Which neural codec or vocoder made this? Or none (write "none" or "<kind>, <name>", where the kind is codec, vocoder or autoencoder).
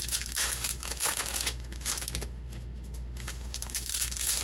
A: autoencoder, DAC-VAE